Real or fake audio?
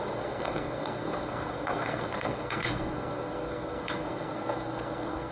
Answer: fake